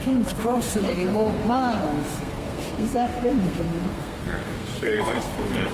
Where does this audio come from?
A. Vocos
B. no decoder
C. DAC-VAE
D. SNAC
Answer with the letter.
D